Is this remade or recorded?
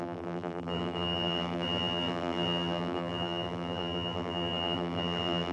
remade